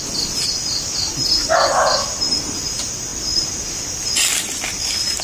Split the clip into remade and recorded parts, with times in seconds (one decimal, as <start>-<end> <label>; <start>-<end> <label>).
0.0-5.2 recorded